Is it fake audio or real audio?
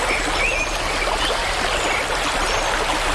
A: real